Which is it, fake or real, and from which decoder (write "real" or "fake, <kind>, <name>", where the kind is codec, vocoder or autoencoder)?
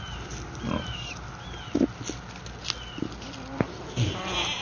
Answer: real